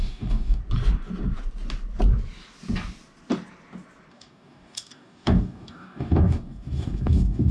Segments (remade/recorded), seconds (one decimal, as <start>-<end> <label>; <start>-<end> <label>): 0.0-0.6 remade; 0.6-4.1 recorded; 4.1-7.5 remade